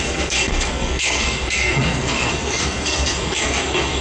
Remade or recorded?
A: remade